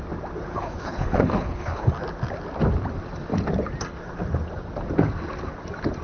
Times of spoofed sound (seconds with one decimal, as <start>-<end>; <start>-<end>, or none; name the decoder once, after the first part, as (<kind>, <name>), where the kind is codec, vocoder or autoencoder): 0.5-1.9 (codec, HILCodec)